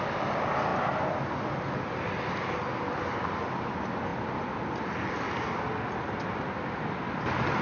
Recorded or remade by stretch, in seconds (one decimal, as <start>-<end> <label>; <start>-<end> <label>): 0.0-7.6 recorded